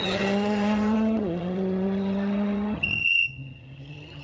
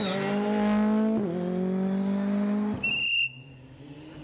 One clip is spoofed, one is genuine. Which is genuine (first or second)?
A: second